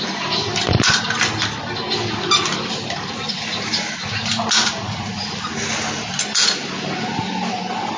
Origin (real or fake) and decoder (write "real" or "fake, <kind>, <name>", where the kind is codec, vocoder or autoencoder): real